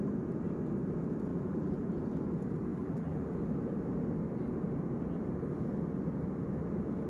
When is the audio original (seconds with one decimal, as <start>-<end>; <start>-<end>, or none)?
0.0-1.3; 1.9-2.7; 3.3-7.1